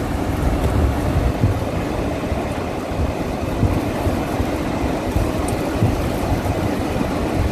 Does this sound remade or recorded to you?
recorded